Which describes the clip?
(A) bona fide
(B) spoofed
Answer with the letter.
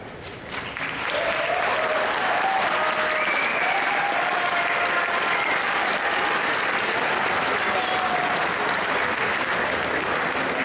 A